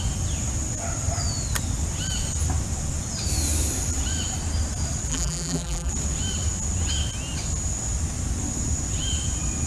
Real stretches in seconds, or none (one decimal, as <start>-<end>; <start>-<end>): 0.0-5.1; 5.9-9.7